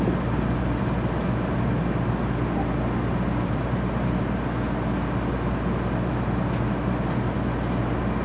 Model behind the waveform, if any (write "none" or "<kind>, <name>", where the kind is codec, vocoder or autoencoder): none